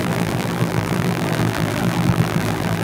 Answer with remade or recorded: remade